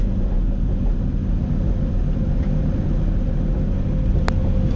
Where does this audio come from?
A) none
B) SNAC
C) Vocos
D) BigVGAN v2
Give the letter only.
A